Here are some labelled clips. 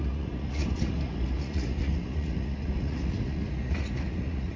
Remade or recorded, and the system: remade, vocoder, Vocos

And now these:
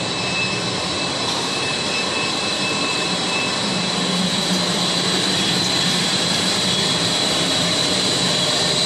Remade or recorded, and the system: remade, vocoder, BigVGAN v2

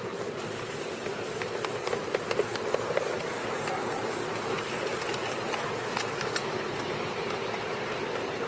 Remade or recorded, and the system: recorded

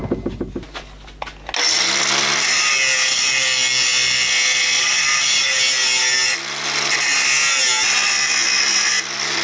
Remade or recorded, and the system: recorded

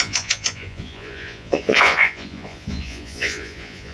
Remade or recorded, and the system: remade, vocoder, Vocos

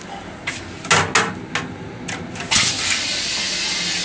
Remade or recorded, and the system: recorded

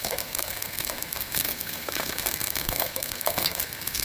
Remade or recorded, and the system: remade, codec, SNAC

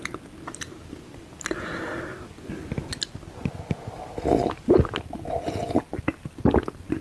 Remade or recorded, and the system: recorded